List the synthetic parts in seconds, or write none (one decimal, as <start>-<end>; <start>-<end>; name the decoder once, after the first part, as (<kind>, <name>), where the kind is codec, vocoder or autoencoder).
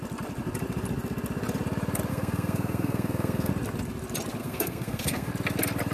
2.1-3.5 (codec, SNAC); 4.4-5.3